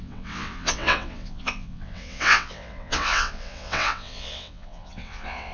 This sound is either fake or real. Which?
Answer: fake